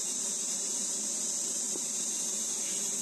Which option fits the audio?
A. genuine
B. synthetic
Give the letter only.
A